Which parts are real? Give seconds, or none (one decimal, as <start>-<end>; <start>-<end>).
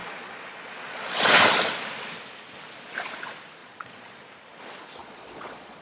1.4-3.6; 4.2-5.0